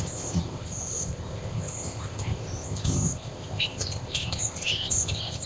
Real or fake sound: fake